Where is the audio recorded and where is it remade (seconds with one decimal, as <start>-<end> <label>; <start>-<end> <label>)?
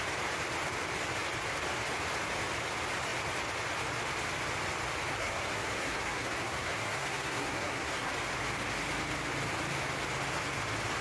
0.0-5.2 recorded; 5.2-8.1 remade; 8.1-11.0 recorded